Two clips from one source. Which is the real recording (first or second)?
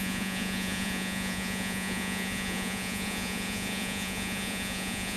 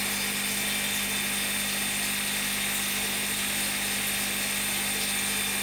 second